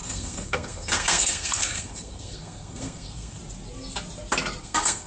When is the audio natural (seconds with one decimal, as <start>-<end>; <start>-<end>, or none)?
3.4-4.6